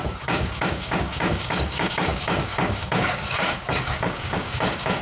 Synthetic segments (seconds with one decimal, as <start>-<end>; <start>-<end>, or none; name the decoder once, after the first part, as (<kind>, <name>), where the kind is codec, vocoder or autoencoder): 0.0-5.0 (codec, DAC)